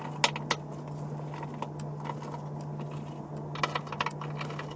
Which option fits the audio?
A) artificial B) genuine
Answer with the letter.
B